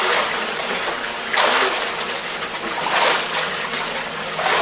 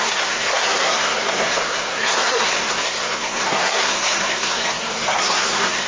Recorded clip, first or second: first